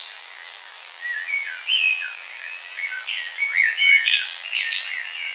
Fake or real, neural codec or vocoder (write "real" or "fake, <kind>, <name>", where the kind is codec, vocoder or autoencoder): fake, vocoder, BigVGAN v2